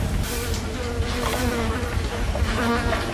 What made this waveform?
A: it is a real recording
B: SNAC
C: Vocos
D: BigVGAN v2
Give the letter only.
A